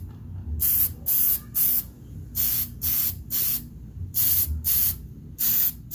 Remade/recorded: recorded